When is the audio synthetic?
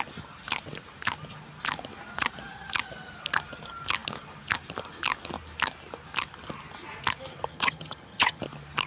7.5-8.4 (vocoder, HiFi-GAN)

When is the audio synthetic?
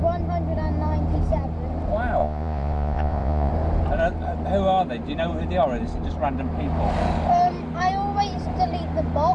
2.2-3.5 (vocoder, Vocos)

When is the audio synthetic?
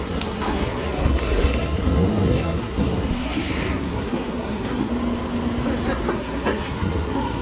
0.0-4.9 (codec, SNAC); 6.1-7.4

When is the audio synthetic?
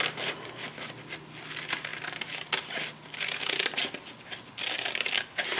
none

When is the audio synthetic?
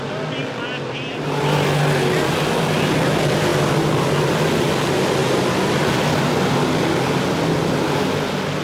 none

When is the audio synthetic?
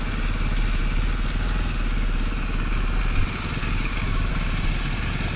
3.6-4.3 (codec, DAC)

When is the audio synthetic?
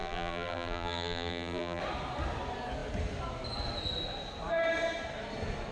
0.0-1.8 (vocoder, BigVGAN v2)